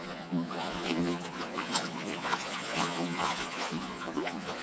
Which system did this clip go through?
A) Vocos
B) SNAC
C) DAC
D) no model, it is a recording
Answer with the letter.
A